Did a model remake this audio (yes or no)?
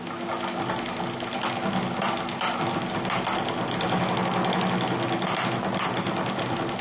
no